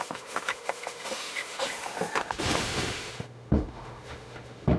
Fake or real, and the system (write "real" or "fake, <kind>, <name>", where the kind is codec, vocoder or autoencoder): fake, autoencoder, DAC-VAE